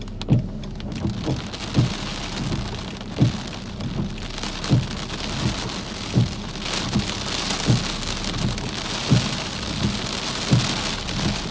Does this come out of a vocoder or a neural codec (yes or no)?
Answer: no